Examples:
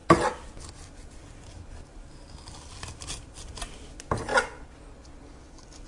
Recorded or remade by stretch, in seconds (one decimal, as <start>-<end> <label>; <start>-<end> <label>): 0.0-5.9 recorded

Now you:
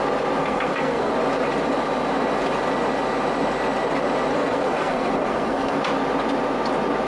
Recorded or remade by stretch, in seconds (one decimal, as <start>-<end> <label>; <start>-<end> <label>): 0.0-0.4 recorded; 0.4-1.1 remade; 1.1-4.3 recorded; 4.3-5.8 remade; 5.8-7.1 recorded

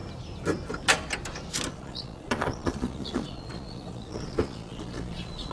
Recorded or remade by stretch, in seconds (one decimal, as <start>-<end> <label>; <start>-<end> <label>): 0.0-1.7 recorded; 1.7-5.5 remade

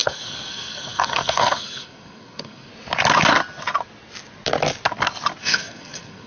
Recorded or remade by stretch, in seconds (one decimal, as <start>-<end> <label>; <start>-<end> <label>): 0.0-2.7 remade; 2.7-5.4 recorded; 5.4-6.3 remade